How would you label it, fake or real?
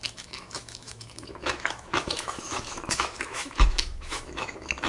fake